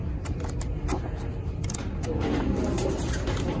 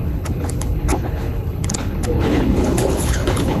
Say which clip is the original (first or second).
first